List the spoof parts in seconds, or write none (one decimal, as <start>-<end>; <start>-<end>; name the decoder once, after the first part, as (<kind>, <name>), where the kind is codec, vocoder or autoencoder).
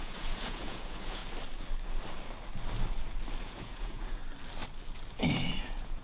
0.0-1.2 (vocoder, Vocos); 3.4-4.2; 5.6-6.0